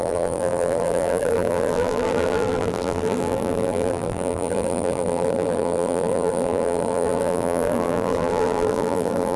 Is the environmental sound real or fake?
fake